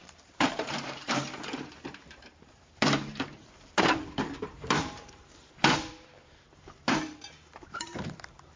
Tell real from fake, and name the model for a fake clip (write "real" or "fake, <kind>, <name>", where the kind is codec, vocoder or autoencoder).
fake, vocoder, BigVGAN v2